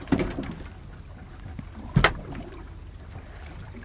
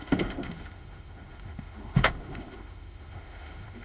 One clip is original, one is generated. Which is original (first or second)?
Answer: first